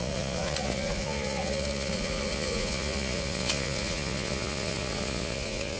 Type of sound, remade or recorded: remade